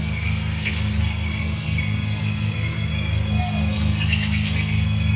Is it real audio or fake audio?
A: fake